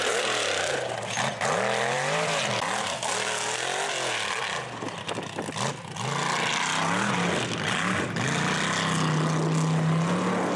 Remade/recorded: recorded